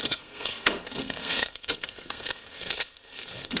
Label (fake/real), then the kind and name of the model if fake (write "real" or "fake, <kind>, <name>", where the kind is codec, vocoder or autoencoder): fake, codec, SNAC